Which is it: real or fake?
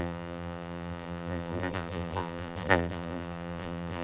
fake